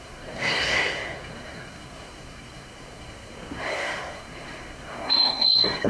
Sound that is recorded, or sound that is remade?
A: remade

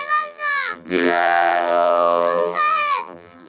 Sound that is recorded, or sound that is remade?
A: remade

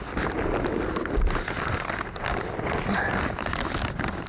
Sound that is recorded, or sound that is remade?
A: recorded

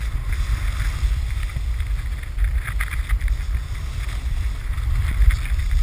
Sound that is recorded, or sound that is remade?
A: recorded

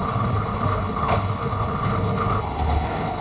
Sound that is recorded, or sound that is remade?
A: remade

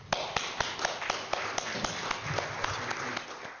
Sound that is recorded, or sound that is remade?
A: recorded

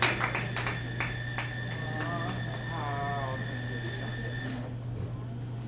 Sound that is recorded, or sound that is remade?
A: recorded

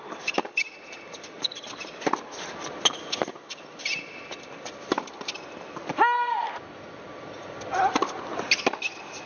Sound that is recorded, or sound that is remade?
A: recorded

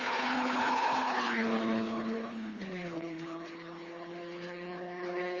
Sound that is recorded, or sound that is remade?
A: remade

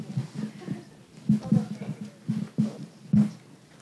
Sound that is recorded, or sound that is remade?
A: recorded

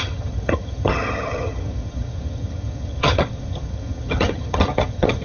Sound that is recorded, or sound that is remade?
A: remade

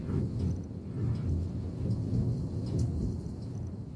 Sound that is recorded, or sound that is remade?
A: recorded